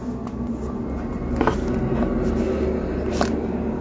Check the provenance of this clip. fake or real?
real